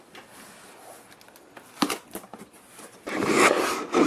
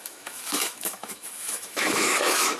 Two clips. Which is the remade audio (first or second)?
second